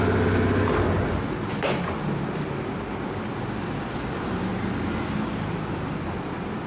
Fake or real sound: real